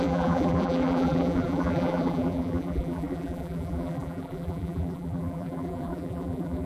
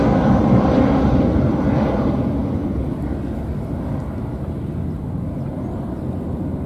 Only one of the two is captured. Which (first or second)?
second